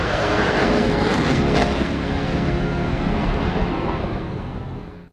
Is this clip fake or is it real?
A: fake